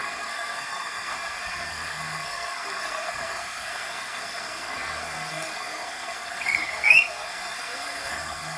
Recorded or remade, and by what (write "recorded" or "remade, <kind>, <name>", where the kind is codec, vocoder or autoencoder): remade, codec, SNAC